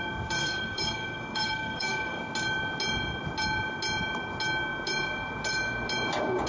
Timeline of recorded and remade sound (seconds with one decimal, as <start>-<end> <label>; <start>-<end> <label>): 0.0-0.4 recorded; 0.4-2.2 remade; 2.2-6.5 recorded